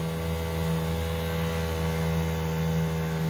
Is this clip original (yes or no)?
yes